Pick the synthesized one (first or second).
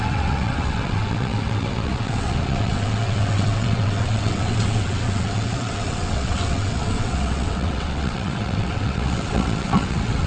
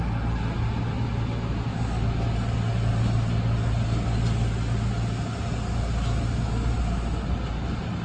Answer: first